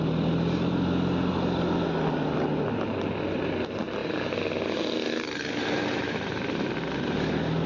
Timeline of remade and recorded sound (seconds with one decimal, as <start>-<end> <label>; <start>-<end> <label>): 0.0-7.7 recorded